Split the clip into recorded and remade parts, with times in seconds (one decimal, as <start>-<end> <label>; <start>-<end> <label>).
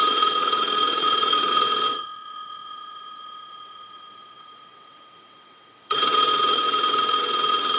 0.0-7.8 remade